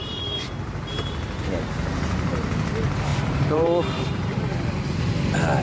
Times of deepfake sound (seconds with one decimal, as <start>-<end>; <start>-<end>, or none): 0.0-0.8; 3.1-4.4